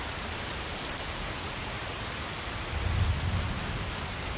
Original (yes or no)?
yes